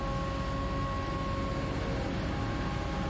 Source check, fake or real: real